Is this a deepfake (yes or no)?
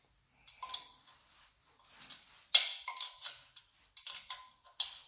no